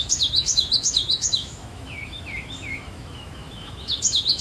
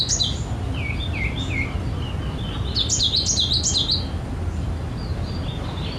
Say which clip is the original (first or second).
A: second